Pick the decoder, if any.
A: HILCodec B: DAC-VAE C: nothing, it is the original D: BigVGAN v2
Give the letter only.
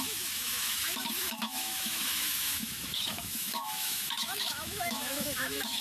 B